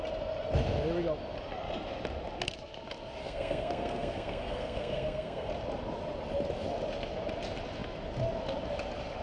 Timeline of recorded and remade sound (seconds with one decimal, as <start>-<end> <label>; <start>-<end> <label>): 0.0-3.2 recorded; 3.2-5.5 remade; 5.5-9.2 recorded